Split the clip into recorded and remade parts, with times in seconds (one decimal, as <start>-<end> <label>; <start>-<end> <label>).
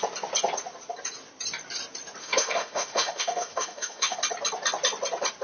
0.0-2.2 recorded; 2.2-4.2 remade; 4.2-5.4 recorded